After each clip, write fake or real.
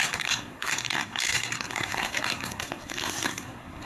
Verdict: fake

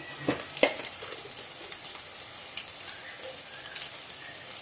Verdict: real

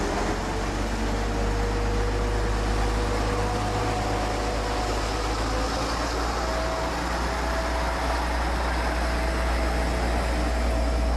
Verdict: real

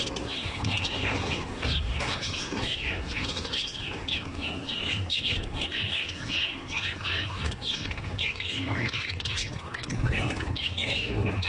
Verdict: fake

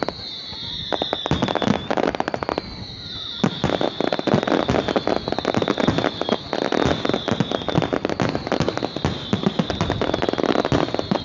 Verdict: real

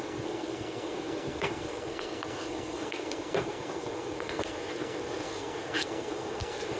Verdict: fake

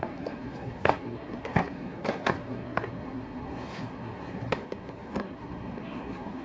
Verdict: fake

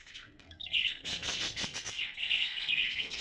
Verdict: fake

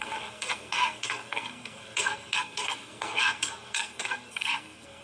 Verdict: fake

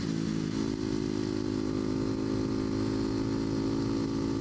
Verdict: real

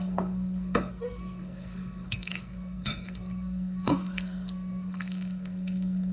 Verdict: fake